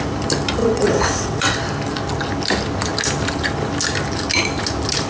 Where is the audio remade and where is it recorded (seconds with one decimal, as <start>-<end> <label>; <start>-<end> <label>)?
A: 0.0-0.6 recorded; 0.6-1.6 remade; 1.6-5.1 recorded